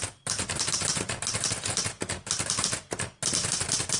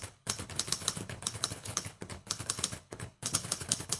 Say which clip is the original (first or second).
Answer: first